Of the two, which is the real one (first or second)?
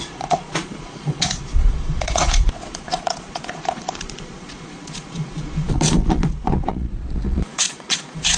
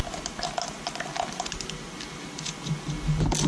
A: second